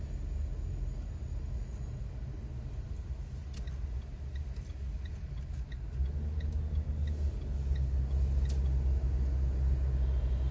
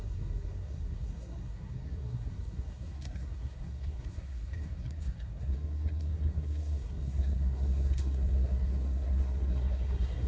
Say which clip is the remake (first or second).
second